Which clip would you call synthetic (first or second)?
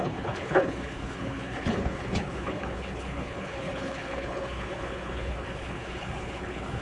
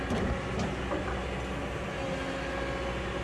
first